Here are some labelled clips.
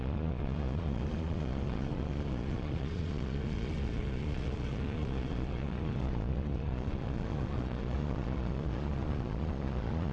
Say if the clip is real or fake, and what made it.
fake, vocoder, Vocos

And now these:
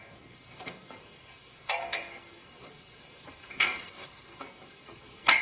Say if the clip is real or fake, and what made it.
fake, codec, SNAC